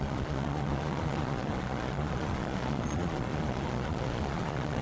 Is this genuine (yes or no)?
no